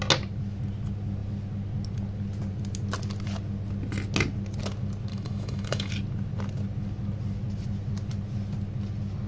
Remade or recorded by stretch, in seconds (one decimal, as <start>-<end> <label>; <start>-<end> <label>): 0.0-5.1 recorded; 5.1-5.9 remade; 5.9-9.3 recorded